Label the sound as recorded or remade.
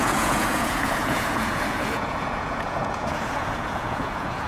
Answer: remade